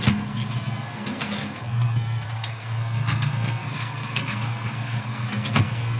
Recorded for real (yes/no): no